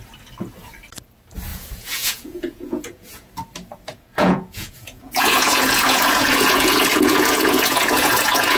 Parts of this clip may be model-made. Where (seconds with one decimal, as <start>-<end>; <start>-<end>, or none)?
1.5-3.3; 3.9-8.6